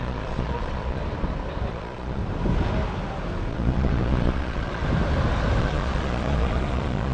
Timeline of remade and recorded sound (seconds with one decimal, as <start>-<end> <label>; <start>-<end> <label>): 0.0-1.0 remade; 1.0-1.7 recorded; 1.7-2.2 remade; 2.2-3.5 recorded; 3.5-4.8 remade; 4.8-5.6 recorded; 5.6-7.1 remade